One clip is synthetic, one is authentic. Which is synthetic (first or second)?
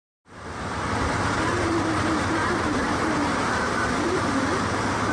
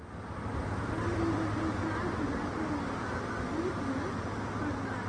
first